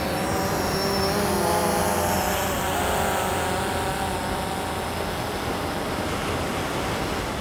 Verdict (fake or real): real